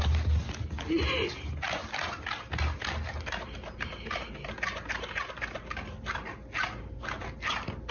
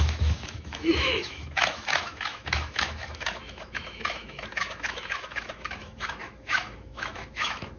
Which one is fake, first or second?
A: second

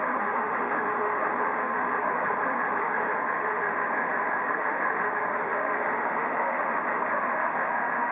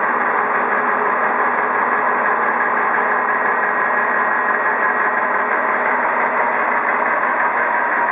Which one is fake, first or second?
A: first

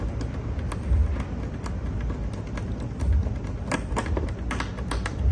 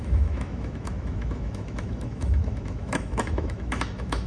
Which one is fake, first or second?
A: second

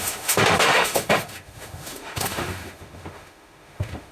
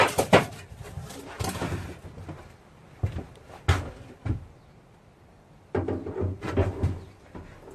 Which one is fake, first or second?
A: first